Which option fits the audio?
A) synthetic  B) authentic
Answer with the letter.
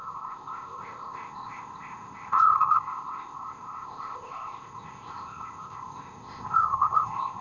A